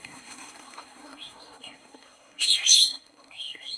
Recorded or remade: remade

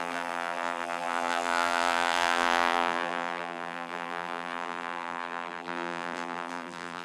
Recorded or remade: remade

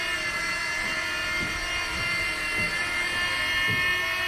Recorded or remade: recorded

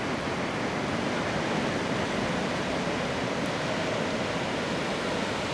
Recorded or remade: recorded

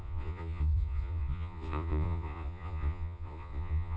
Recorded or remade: remade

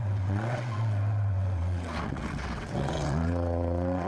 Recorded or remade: remade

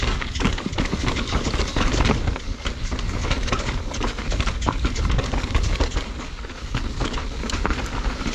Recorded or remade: remade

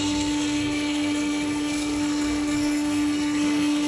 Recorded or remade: remade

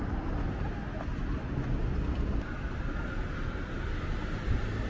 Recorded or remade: recorded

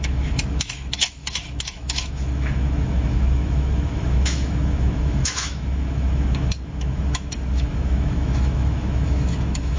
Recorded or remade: remade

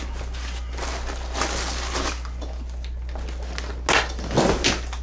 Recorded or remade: recorded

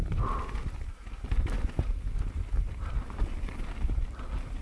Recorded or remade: recorded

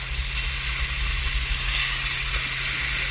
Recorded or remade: recorded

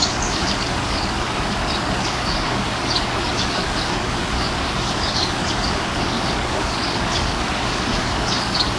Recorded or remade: remade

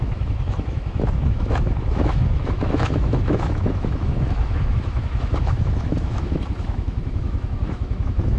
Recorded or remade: remade